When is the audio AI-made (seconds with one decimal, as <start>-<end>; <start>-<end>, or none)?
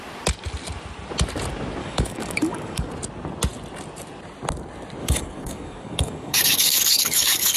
1.8-2.9; 5.0-7.6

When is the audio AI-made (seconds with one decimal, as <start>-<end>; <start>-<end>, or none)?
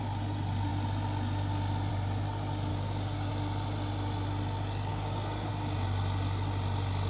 2.7-3.3; 4.9-5.5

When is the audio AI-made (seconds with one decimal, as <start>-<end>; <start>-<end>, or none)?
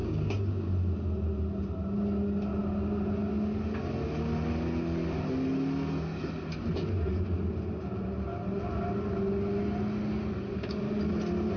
0.0-0.7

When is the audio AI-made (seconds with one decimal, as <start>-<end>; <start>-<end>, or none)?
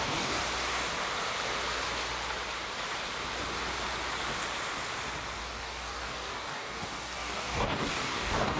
0.0-0.4; 5.4-8.6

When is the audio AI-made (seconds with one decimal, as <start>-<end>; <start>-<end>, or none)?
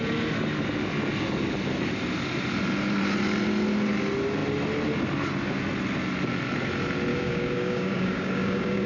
7.1-8.9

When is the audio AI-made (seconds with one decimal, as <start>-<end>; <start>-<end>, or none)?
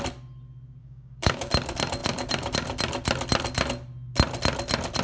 0.8-1.5